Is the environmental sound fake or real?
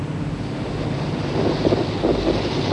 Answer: real